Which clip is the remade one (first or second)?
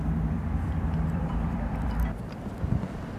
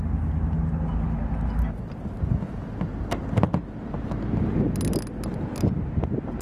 first